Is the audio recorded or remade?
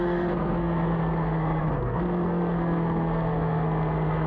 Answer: remade